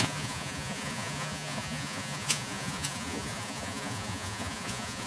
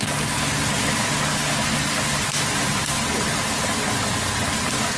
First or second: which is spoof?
first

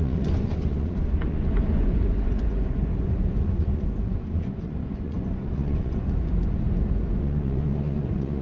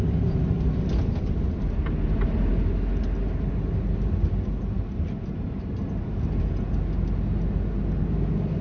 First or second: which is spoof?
first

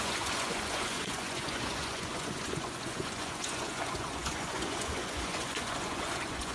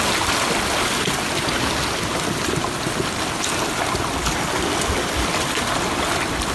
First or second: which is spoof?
first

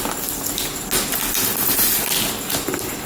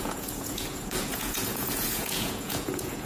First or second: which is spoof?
second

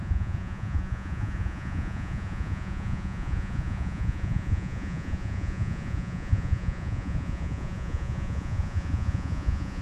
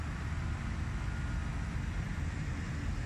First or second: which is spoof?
first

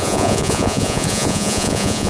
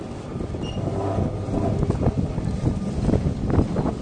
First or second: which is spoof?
first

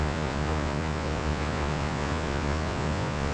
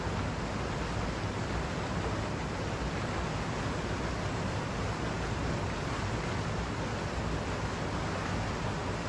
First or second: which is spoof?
first